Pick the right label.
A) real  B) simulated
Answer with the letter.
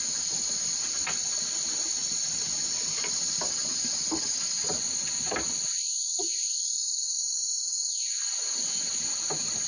A